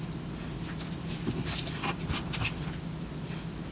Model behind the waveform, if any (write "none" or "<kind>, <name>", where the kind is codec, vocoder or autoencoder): none